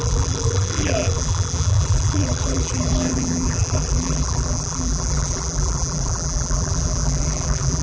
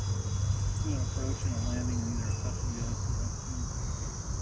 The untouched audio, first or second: second